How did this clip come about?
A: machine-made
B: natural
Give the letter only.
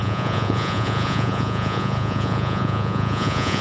A